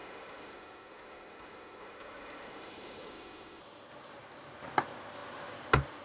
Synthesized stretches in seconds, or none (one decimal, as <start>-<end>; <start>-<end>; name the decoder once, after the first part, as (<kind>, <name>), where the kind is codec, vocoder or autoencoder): 0.0-3.6 (autoencoder, DAC-VAE)

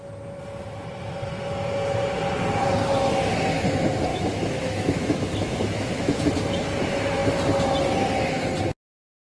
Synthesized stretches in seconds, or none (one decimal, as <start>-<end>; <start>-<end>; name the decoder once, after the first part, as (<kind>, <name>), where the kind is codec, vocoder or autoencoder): 4.1-6.2 (autoencoder, DAC-VAE)

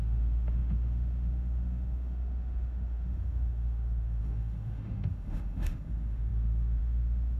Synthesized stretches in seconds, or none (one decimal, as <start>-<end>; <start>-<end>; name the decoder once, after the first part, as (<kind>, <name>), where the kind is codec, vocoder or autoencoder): 0.0-7.4 (autoencoder, DAC-VAE)

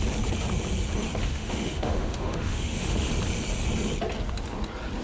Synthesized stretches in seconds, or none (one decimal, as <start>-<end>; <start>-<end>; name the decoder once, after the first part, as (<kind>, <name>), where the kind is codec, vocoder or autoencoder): 1.2-3.1 (autoencoder, DAC-VAE)

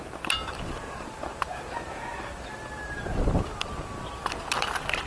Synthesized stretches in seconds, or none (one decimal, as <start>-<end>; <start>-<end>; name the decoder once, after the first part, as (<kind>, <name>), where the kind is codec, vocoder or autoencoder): none

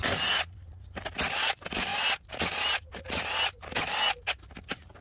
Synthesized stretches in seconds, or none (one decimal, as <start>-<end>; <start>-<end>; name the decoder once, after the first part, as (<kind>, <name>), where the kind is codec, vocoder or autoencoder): none